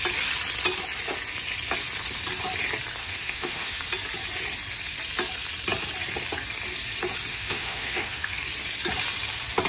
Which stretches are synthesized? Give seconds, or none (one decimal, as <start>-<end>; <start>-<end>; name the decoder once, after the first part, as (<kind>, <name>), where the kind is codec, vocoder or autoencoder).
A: 3.0-3.8 (autoencoder, DAC-VAE); 7.3-8.4